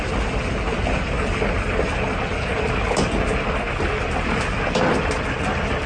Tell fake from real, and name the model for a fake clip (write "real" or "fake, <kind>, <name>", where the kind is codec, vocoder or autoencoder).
real